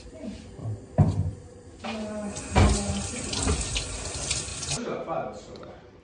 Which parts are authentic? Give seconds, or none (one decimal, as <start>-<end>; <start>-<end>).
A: 0.0-0.6; 1.8-6.0